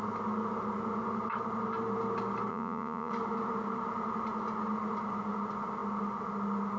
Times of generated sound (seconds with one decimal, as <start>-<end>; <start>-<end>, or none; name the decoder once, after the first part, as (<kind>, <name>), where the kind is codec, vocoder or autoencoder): 2.5-3.1 (vocoder, Vocos)